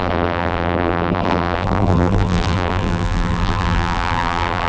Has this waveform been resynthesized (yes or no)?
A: yes